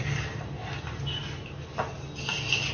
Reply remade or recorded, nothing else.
recorded